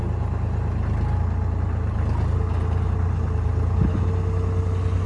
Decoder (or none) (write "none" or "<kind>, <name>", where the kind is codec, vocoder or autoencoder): none